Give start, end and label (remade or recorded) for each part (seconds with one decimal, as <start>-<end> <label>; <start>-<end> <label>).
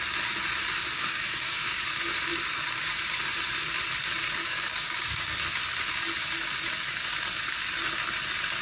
0.0-0.8 recorded; 0.8-1.8 remade; 1.8-4.4 recorded; 4.4-5.4 remade; 5.4-8.6 recorded